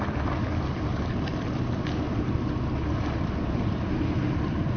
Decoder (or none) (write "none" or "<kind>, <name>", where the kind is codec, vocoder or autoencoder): none